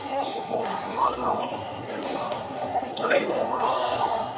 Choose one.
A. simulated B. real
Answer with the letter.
A